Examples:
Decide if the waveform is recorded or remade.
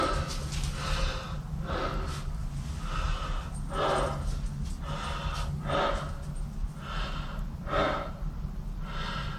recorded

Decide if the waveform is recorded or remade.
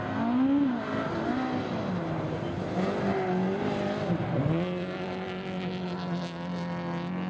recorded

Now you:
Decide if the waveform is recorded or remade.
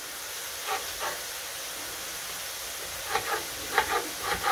recorded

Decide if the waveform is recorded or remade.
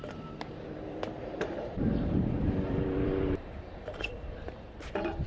remade